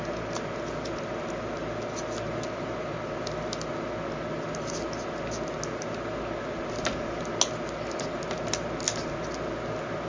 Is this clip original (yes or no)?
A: yes